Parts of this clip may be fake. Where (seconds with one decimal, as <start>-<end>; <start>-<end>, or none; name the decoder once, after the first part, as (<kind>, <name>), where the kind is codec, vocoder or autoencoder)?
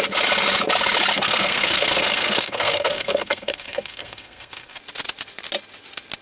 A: 1.1-4.8 (codec, SNAC)